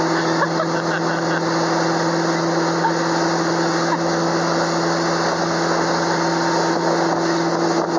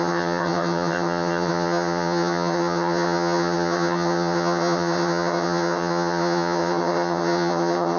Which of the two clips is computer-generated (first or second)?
second